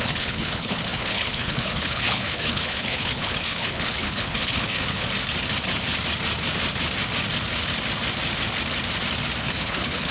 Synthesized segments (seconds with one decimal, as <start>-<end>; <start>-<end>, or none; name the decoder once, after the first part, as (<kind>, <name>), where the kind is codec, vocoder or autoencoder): 0.0-5.0 (codec, HILCodec); 9.4-10.1